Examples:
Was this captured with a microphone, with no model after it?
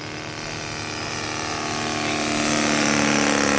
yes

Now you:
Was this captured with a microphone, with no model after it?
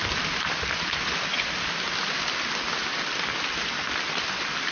yes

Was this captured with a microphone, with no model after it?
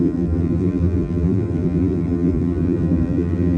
no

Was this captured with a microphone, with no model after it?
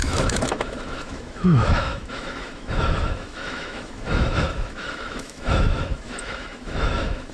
no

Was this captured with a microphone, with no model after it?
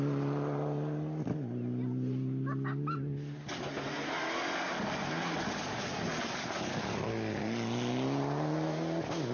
yes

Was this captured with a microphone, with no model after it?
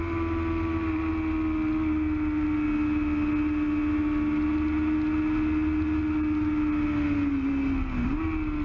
yes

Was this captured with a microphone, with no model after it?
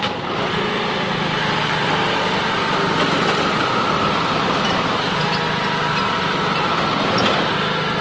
yes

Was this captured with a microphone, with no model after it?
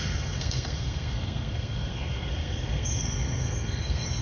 no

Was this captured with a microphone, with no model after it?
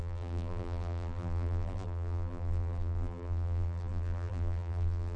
no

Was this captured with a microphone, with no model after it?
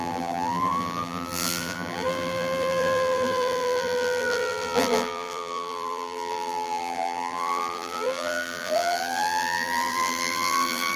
no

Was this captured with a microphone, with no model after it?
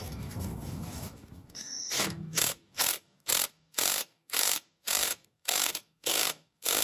no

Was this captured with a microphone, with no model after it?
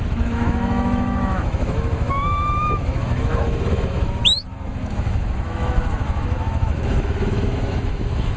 no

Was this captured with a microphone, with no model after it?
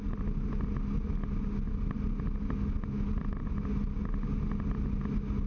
yes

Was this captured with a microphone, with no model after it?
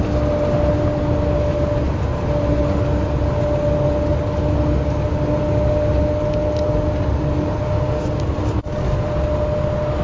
yes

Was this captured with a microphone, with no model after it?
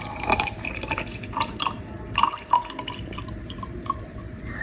no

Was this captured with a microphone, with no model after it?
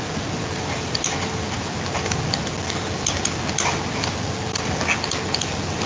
yes